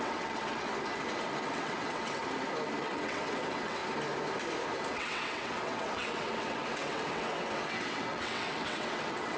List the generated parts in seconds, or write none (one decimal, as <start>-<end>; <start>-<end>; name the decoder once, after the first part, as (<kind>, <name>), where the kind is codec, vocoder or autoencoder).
0.0-0.7 (vocoder, WaveNeXt); 1.5-2.2; 2.8-3.8; 4.9-9.4